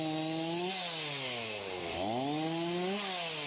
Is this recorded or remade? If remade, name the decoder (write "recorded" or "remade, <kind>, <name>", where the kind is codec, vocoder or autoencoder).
recorded